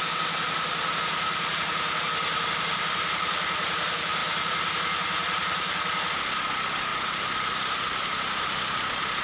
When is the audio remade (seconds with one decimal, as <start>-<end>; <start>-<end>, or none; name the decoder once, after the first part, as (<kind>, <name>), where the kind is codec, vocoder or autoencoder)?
none